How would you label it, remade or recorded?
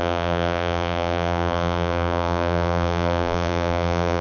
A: remade